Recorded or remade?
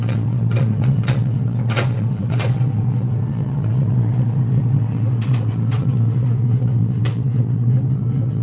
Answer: remade